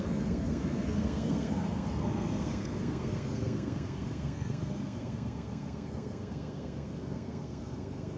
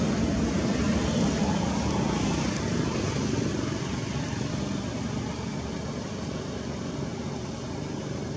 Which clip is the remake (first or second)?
first